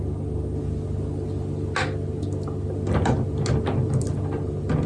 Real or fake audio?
real